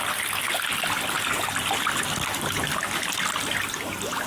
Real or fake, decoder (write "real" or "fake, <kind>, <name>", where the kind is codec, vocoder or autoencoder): real